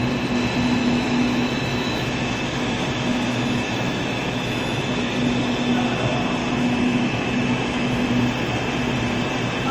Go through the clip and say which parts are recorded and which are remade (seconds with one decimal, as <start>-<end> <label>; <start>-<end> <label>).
0.0-0.8 recorded; 0.8-4.8 remade; 4.8-6.4 recorded; 6.4-8.1 remade; 8.1-9.7 recorded